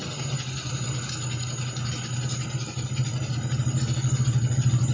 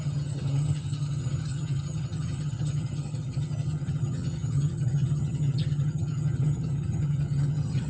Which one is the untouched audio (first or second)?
first